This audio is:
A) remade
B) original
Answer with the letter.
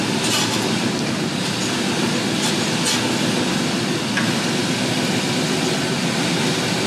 B